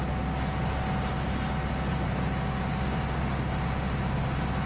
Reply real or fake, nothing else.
real